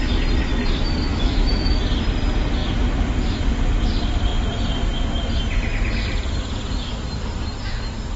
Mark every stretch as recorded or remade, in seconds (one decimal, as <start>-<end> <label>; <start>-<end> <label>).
0.0-1.1 recorded; 1.1-1.8 remade; 1.8-8.2 recorded

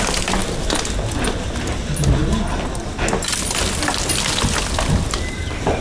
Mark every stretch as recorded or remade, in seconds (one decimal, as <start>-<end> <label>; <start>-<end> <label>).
0.0-5.8 recorded

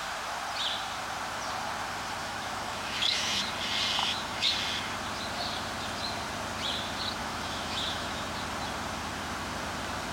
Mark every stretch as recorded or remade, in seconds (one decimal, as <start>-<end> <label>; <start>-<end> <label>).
0.0-2.2 recorded; 2.2-3.4 remade; 3.4-4.0 recorded; 4.0-4.5 remade; 4.5-7.2 recorded; 7.2-8.2 remade; 8.2-10.1 recorded

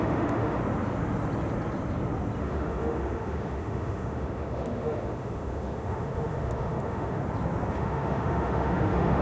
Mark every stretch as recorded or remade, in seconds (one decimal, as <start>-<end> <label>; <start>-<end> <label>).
0.0-0.6 remade; 0.6-2.4 recorded; 2.4-7.2 remade; 7.2-7.7 recorded; 7.7-9.2 remade

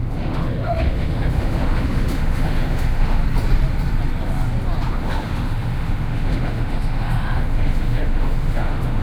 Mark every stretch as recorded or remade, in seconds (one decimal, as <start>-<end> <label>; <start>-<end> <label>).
0.0-3.2 remade; 3.2-4.9 recorded; 4.9-9.0 remade

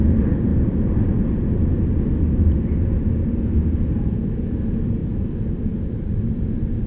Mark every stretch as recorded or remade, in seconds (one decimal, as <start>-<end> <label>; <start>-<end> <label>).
0.0-6.9 recorded

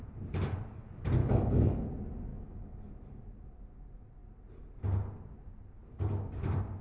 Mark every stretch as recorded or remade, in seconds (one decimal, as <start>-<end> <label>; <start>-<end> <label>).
0.0-1.2 recorded; 1.2-1.9 remade; 1.9-2.3 recorded; 2.3-2.9 remade; 2.9-6.8 recorded

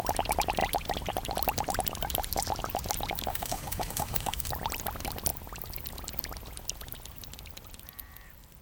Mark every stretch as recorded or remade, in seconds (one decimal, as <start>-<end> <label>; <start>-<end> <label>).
0.0-3.3 recorded; 3.3-4.5 remade; 4.5-8.6 recorded